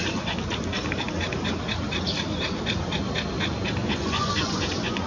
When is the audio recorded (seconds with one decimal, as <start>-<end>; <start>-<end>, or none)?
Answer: 0.0-3.8